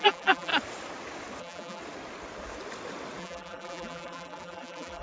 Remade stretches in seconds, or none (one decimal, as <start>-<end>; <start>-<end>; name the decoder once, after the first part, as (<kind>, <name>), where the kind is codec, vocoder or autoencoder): 0.0-0.5 (vocoder, BigVGAN v2); 1.4-1.8; 3.2-5.0

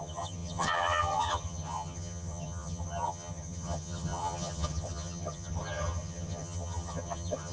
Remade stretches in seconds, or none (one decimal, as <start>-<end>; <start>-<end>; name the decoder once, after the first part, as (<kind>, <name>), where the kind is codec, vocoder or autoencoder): 0.0-7.5 (vocoder, HiFi-GAN)

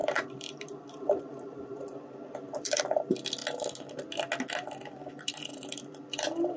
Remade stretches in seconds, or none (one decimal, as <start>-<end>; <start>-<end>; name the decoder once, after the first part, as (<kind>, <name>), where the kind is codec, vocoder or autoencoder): 0.0-3.4 (vocoder, BigVGAN v2); 5.1-6.6

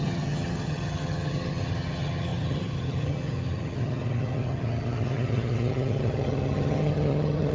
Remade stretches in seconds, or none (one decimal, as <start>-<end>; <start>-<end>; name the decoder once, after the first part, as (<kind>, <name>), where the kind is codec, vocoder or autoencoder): 0.0-7.5 (vocoder, HiFi-GAN)